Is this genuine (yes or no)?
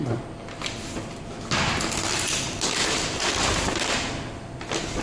yes